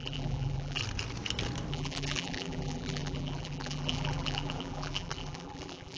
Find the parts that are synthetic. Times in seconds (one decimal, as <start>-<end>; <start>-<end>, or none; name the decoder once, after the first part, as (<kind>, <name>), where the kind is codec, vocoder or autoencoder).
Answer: 0.0-0.8 (vocoder, BigVGAN v2); 1.7-6.0